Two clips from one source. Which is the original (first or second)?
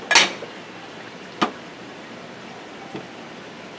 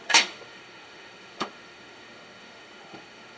first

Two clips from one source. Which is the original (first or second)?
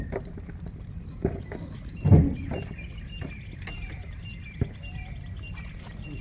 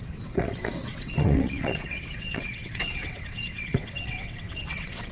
first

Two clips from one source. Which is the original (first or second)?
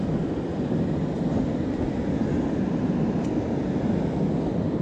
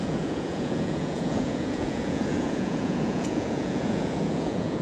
first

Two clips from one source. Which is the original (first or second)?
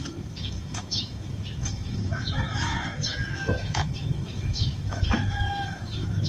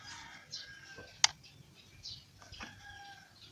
second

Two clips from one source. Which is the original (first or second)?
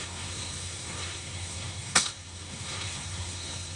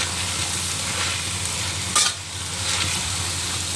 second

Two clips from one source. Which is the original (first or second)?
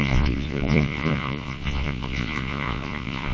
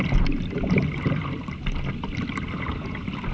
second